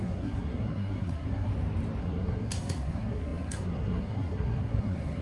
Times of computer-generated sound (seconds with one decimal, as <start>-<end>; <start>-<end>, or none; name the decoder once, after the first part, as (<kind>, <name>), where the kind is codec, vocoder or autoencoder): 0.0-1.5 (codec, SNAC); 2.0-5.2